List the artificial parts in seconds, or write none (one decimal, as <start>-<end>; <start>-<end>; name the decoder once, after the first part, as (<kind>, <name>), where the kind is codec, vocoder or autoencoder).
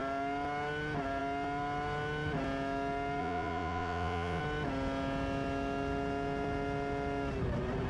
3.2-4.4 (vocoder, Vocos)